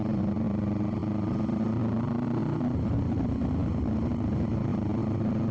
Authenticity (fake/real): real